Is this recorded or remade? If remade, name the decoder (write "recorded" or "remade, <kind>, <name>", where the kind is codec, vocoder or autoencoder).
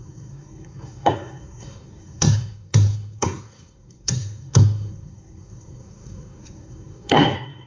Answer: remade, codec, SNAC